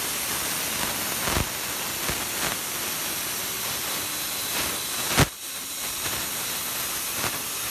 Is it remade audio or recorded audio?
recorded